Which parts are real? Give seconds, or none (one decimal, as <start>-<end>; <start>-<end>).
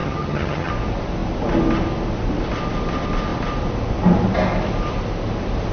0.7-5.7